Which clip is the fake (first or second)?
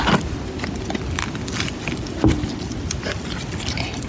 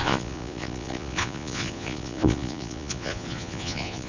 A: second